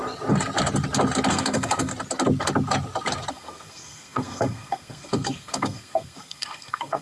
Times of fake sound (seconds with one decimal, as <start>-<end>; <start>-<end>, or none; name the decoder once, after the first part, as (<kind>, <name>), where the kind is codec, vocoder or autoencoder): 1.3-1.9 (codec, SNAC); 3.3-7.0